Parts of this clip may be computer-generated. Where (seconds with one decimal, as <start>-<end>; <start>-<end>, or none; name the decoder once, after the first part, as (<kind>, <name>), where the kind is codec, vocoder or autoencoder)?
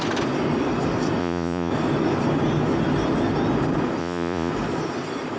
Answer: 1.2-1.7 (vocoder, Vocos); 4.0-4.5